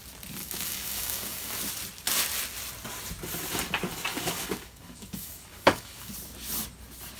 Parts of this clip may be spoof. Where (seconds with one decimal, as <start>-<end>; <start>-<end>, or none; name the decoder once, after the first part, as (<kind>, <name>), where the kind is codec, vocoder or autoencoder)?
0.4-1.6 (codec, DAC); 4.1-6.1